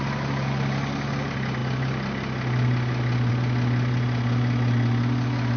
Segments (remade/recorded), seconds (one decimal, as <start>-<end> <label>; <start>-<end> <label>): 0.0-5.6 recorded